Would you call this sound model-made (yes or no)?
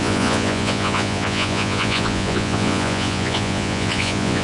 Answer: yes